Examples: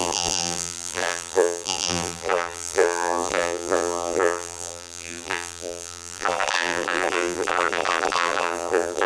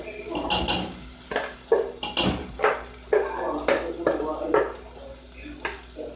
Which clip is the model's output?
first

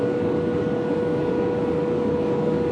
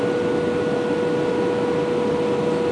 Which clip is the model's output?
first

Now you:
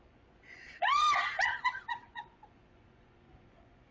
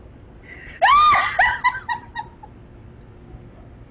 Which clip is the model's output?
first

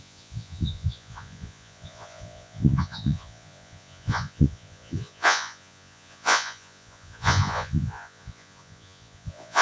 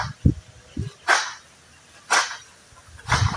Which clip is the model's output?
first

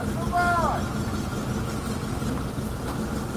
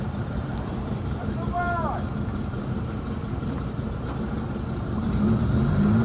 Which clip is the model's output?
second